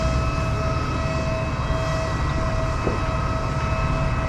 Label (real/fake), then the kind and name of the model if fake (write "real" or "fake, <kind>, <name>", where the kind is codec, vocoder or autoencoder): real